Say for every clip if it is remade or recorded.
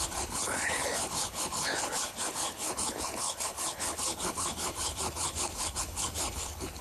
remade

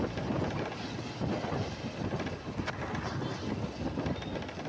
recorded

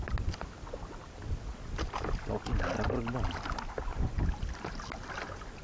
recorded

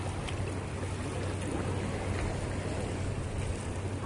recorded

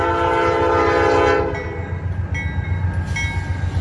recorded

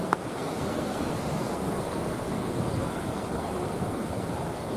remade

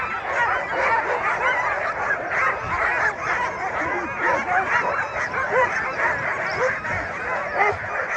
recorded